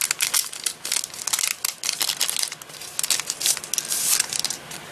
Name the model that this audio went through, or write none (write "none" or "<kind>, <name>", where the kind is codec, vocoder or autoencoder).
none